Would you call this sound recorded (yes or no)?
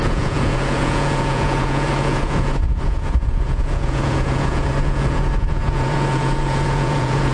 no